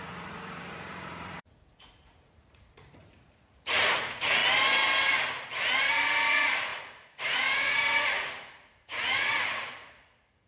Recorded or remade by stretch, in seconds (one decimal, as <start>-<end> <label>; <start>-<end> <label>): 0.0-4.4 remade; 4.4-5.9 recorded; 5.9-10.5 remade